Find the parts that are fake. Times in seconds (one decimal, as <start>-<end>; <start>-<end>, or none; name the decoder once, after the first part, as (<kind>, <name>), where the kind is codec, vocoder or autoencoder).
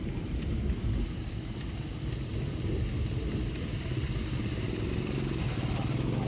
none